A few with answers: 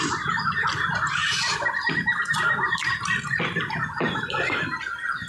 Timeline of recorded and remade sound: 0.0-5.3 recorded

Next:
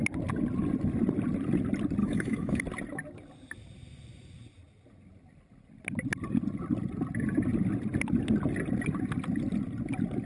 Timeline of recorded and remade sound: 0.0-2.0 recorded; 2.0-2.6 remade; 2.6-10.3 recorded

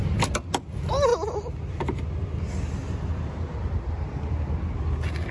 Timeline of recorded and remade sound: 0.0-5.3 recorded

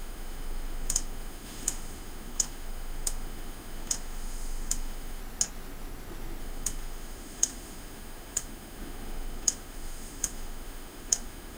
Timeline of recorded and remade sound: 0.0-5.2 remade; 5.2-6.4 recorded; 6.4-11.6 remade

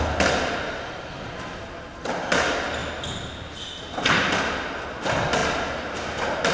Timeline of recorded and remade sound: 0.0-6.5 recorded

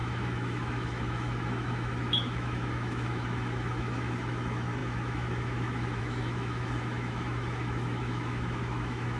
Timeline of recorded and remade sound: 0.0-9.2 remade

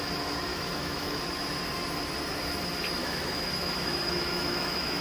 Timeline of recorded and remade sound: 0.0-0.5 recorded; 0.5-1.2 remade; 1.2-3.0 recorded; 3.0-5.0 remade

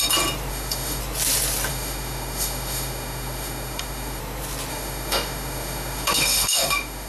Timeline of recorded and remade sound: 0.0-0.5 recorded; 0.5-1.0 remade; 1.0-1.7 recorded; 1.7-4.2 remade; 4.2-4.7 recorded; 4.7-7.1 remade